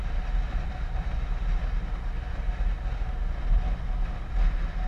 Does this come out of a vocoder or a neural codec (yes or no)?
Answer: no